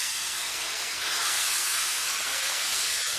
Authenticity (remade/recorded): remade